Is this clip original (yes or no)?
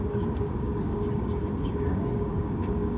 no